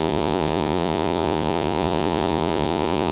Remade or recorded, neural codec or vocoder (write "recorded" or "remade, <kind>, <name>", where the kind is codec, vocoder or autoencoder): remade, vocoder, Vocos